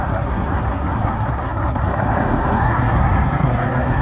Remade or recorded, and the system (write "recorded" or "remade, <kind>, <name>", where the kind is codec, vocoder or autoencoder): remade, codec, SNAC